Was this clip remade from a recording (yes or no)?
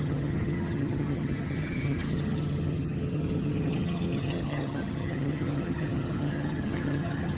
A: yes